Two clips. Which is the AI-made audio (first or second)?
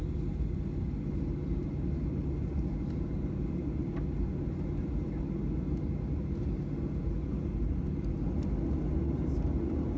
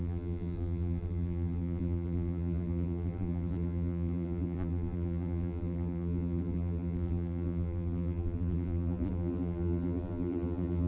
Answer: second